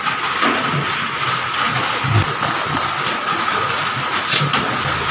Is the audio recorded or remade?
recorded